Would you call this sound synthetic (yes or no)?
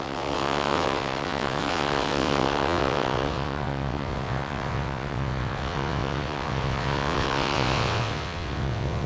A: yes